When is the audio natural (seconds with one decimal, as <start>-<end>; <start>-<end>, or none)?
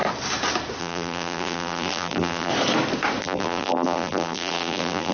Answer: 0.0-0.8; 2.5-3.2